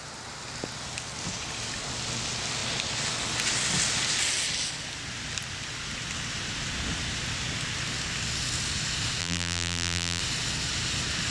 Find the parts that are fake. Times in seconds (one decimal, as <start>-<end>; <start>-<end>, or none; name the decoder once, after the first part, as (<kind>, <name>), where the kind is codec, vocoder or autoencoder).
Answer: 9.2-10.2 (vocoder, BigVGAN v2)